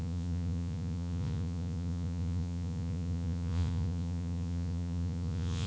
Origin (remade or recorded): remade